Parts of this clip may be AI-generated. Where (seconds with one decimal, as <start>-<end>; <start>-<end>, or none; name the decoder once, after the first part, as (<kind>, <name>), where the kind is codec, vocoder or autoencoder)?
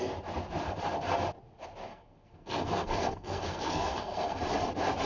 1.9-4.4 (codec, SNAC)